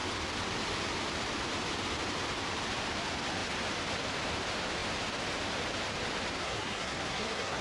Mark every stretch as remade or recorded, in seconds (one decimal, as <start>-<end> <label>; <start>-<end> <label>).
0.0-6.4 recorded; 6.4-7.6 remade